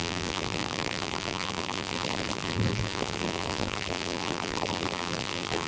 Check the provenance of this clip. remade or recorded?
remade